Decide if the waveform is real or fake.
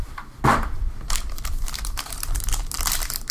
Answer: real